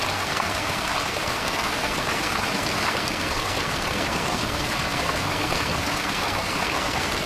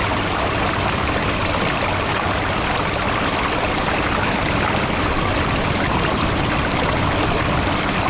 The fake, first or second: first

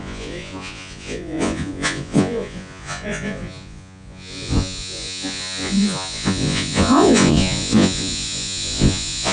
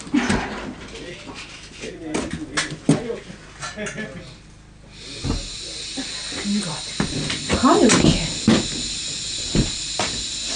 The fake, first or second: first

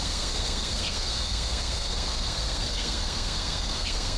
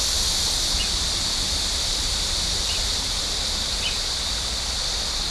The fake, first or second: first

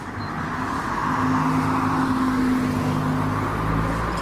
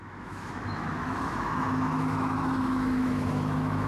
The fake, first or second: second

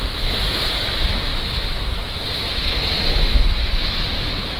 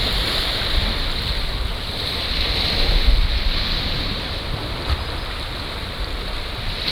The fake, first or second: first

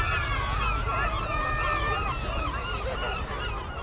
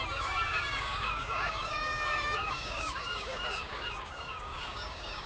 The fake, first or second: second